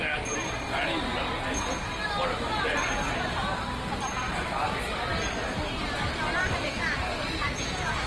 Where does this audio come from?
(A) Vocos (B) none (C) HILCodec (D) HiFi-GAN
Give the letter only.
B